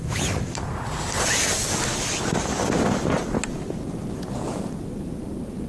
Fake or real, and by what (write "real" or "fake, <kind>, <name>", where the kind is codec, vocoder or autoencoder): real